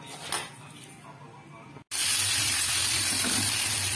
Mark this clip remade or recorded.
recorded